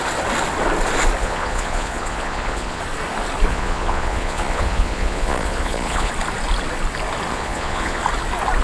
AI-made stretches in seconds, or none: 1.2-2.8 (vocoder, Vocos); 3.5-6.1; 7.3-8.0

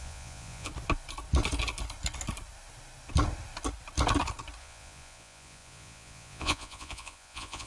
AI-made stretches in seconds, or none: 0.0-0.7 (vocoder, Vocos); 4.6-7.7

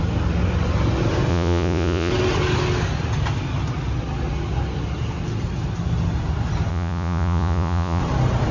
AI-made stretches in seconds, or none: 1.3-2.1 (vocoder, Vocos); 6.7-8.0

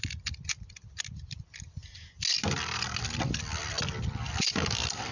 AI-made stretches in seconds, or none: none